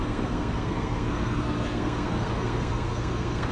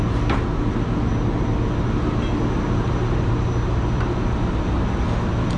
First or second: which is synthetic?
first